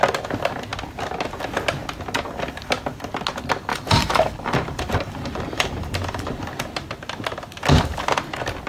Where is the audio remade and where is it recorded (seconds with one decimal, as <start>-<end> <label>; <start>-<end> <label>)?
0.0-3.7 recorded; 3.7-6.4 remade; 6.4-8.7 recorded